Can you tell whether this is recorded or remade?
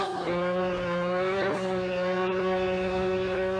remade